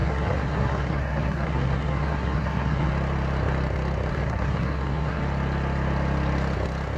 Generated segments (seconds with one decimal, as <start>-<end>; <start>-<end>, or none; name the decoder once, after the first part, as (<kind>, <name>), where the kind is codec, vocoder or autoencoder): 0.0-2.9 (codec, SNAC); 4.1-5.2

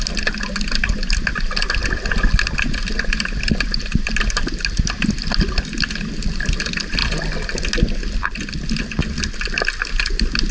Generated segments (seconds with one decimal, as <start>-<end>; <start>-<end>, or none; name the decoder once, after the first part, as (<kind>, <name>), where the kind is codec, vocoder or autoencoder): none

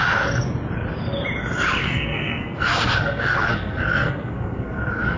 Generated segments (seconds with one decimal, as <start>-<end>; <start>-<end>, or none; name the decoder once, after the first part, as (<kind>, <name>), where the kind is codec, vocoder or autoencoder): 1.8-5.2 (codec, SNAC)

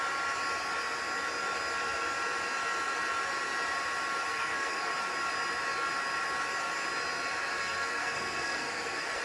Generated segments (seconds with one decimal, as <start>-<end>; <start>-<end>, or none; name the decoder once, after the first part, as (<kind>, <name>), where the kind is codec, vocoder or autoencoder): 4.3-4.9 (codec, SNAC); 7.6-9.2

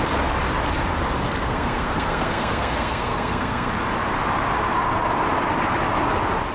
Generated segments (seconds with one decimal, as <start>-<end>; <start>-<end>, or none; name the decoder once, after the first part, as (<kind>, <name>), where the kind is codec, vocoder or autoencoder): 1.3-3.7 (codec, SNAC)

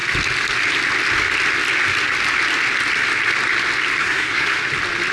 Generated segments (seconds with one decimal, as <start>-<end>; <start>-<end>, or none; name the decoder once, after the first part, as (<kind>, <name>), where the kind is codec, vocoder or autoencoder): 4.0-4.6 (codec, SNAC)

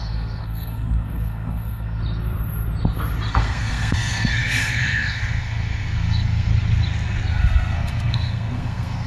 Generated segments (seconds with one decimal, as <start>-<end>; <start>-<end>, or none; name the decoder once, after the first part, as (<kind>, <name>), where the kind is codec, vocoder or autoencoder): 0.0-2.0 (codec, SNAC); 3.3-6.5; 7.3-9.1